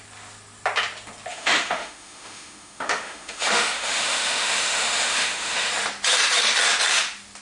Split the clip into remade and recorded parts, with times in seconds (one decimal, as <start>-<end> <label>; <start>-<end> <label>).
0.0-1.3 recorded; 1.3-5.7 remade; 5.7-7.4 recorded